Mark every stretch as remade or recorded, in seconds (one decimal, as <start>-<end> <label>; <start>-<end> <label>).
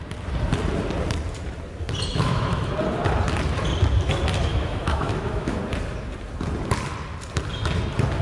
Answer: 0.0-2.1 recorded; 2.1-2.7 remade; 2.7-4.5 recorded; 4.5-5.6 remade; 5.6-8.2 recorded